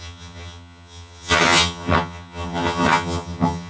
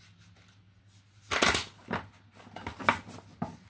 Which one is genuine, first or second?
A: second